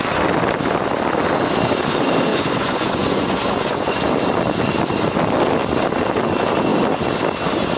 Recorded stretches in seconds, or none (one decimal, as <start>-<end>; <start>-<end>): 0.0-2.3; 4.0-7.8